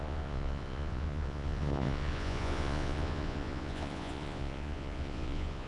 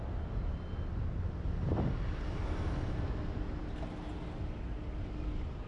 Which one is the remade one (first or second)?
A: first